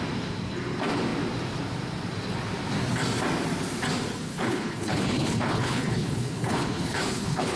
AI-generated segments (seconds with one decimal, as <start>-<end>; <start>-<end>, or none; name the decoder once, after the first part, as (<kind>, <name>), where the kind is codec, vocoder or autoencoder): 4.2-7.6 (codec, HILCodec)